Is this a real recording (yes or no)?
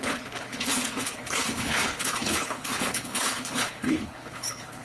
no